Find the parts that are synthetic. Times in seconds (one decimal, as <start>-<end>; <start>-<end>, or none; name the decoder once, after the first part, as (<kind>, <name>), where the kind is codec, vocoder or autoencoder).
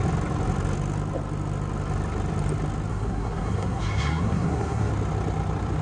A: 2.9-4.9 (codec, SNAC)